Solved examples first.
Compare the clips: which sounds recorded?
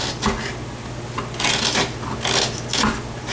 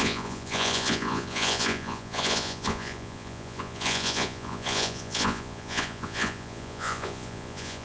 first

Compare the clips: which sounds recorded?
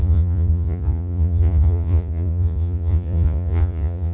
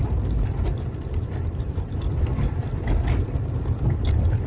second